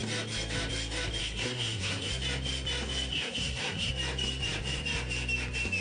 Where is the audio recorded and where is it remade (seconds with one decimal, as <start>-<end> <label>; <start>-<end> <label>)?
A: 0.0-1.2 recorded; 1.2-2.1 remade; 2.1-3.1 recorded; 3.1-3.9 remade; 3.9-5.8 recorded